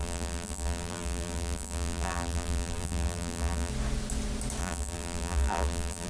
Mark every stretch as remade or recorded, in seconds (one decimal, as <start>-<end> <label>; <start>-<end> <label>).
0.0-3.7 remade; 3.7-4.6 recorded; 4.6-6.1 remade